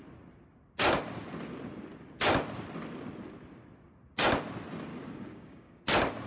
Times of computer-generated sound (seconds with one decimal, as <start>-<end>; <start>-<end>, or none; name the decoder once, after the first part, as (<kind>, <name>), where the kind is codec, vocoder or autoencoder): 4.9-5.8 (codec, DAC)